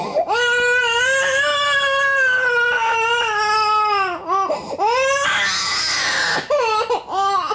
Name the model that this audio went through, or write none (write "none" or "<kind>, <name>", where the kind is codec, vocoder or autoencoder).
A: none